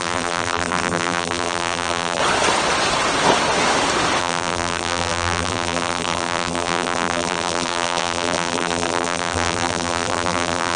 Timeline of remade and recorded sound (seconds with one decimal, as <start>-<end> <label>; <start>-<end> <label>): 0.0-2.2 remade; 2.2-4.2 recorded; 4.2-10.8 remade